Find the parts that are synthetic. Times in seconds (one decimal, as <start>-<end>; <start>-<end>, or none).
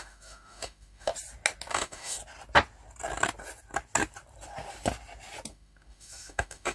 0.0-1.1; 1.7-2.2; 5.5-6.7